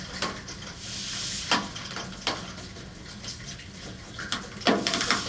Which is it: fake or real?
fake